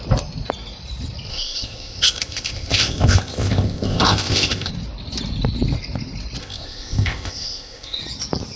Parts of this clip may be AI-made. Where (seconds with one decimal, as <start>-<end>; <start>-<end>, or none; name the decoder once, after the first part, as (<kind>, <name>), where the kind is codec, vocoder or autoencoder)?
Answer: 1.3-4.7 (codec, ZipCodec); 6.4-8.0